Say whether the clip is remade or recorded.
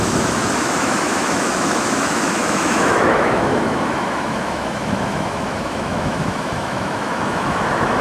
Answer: remade